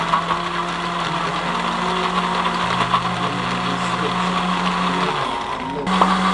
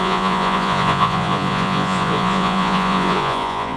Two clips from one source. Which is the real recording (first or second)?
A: first